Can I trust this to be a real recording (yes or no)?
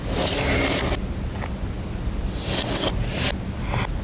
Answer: yes